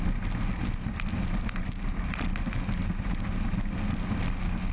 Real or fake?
real